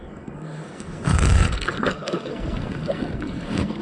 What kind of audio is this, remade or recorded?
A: remade